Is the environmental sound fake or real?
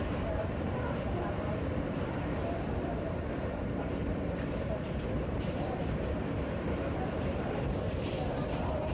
fake